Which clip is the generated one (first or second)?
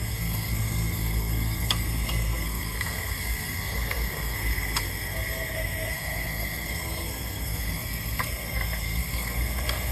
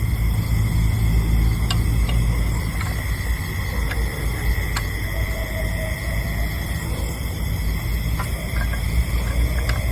first